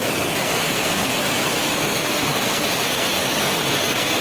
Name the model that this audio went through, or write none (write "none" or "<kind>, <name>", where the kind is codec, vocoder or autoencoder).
codec, SNAC